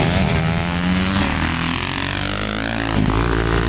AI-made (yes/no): no